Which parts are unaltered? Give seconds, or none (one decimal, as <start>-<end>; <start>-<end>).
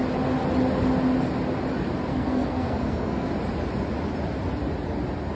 0.0-2.1; 3.3-5.4